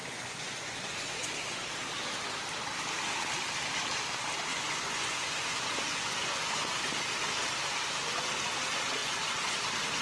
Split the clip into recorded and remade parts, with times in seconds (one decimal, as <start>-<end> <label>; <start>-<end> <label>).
0.0-1.7 remade; 1.7-4.5 recorded; 4.5-6.8 remade; 6.8-9.0 recorded; 9.0-9.6 remade; 9.6-10.0 recorded